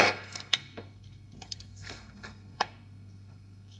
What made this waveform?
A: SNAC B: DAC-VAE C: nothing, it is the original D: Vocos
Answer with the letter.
A